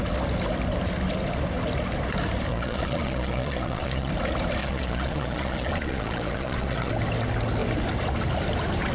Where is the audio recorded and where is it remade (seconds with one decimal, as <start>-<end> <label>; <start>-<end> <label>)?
0.0-2.5 recorded; 2.5-4.1 remade; 4.1-4.6 recorded; 4.6-6.9 remade; 6.9-8.9 recorded